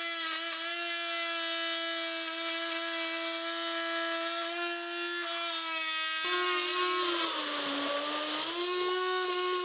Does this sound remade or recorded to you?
recorded